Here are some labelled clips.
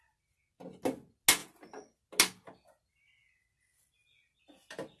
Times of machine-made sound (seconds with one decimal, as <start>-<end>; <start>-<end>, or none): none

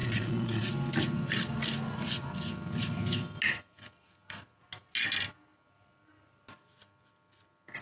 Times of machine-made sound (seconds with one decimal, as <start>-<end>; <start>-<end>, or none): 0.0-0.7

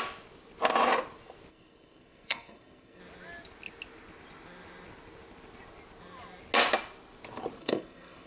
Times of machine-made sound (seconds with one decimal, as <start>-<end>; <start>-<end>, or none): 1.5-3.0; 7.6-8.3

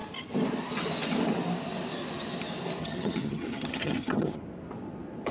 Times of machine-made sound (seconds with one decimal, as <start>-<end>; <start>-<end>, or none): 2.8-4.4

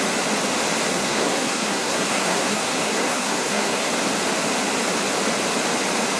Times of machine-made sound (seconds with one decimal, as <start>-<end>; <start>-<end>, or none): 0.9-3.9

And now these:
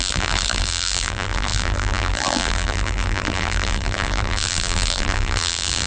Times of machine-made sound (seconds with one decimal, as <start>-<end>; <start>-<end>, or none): 0.0-5.9

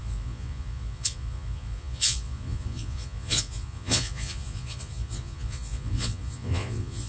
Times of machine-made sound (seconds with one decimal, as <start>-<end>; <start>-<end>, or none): 0.0-7.1

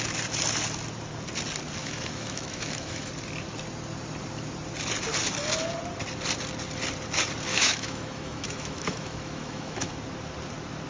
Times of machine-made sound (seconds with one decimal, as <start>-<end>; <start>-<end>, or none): 1.8-3.1; 7.5-9.9